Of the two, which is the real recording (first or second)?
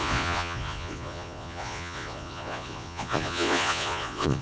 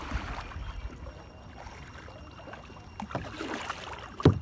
second